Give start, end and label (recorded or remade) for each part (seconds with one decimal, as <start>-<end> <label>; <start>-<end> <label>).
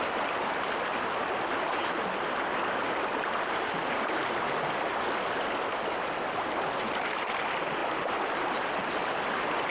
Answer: 0.0-9.7 recorded